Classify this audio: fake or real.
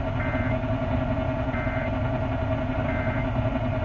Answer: real